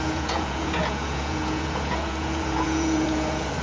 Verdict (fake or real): fake